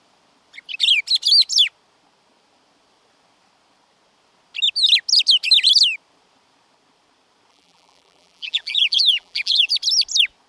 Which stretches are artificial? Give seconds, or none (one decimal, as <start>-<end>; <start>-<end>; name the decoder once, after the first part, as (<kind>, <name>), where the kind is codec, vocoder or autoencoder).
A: 7.5-9.7 (vocoder, BigVGAN v2)